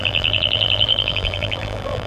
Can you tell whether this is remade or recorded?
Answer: remade